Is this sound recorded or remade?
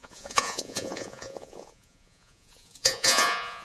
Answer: remade